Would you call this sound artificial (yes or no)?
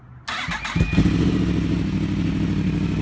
no